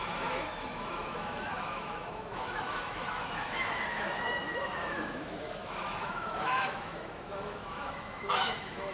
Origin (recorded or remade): remade